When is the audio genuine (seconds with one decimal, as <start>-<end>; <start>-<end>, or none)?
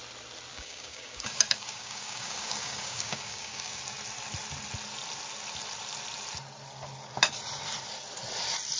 0.0-0.5; 3.8-8.8